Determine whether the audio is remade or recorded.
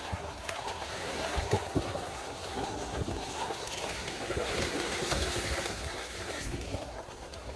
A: remade